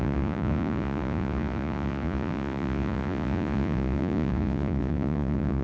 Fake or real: fake